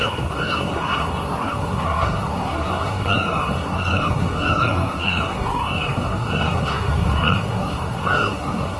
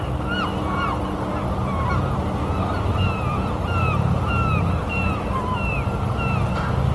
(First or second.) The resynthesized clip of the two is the first